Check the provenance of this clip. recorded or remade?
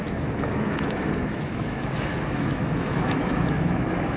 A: remade